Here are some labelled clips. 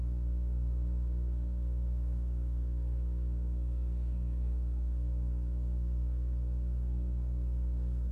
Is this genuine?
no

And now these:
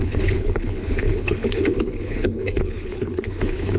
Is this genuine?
no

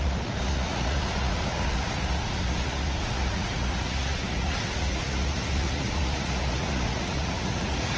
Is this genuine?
no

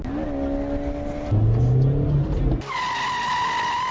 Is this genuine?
yes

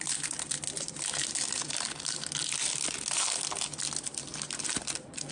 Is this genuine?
yes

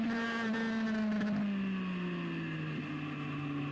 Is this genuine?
yes